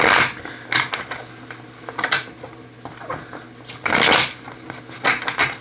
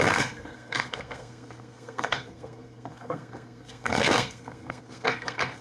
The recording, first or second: first